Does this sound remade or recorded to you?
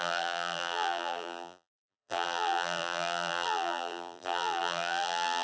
remade